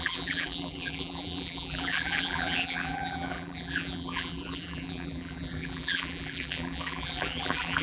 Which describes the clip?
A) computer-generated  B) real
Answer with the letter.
A